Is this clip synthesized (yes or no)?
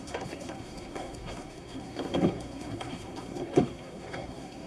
yes